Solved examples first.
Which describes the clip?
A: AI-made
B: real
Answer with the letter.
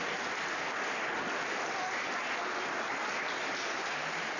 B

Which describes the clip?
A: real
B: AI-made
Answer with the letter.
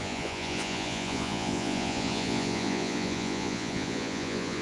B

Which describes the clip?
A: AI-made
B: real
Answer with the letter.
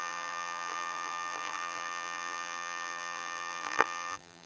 A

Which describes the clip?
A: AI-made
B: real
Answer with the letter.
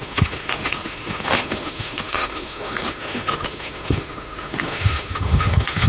A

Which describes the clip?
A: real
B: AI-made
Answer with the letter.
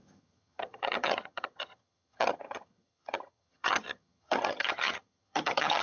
B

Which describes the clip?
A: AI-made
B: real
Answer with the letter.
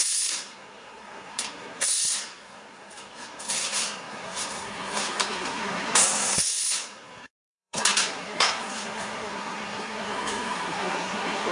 A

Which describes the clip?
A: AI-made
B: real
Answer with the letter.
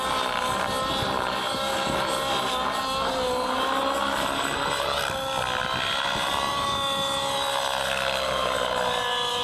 B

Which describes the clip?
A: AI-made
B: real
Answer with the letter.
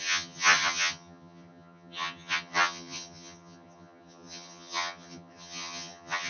A